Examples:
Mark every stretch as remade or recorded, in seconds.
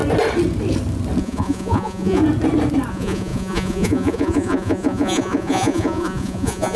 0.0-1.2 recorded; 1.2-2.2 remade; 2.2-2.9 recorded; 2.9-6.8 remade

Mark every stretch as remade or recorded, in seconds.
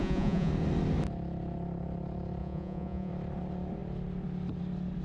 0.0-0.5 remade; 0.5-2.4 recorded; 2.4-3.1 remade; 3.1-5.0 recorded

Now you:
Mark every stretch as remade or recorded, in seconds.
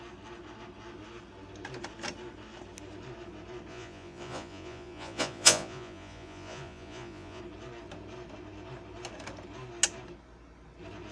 0.0-3.7 recorded; 3.7-7.4 remade; 7.4-11.1 recorded